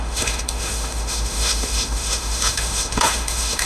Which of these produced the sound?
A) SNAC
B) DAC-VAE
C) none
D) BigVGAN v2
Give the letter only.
B